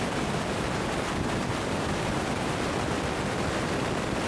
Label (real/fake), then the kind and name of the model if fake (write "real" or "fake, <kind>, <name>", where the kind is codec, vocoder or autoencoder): real